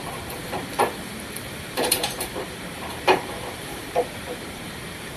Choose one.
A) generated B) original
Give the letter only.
A